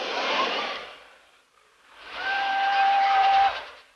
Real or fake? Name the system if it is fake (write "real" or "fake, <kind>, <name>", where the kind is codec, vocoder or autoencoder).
fake, vocoder, BigVGAN v2